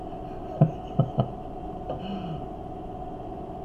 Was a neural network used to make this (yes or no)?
no